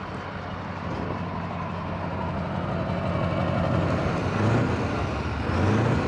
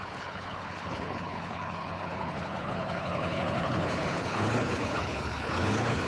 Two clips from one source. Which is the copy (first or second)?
second